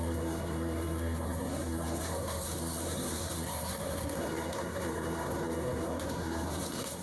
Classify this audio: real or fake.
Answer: fake